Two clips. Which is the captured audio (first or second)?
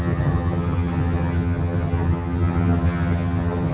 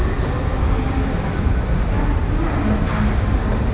second